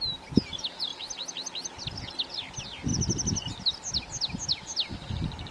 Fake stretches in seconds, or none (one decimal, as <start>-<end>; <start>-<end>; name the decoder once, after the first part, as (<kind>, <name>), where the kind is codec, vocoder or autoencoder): none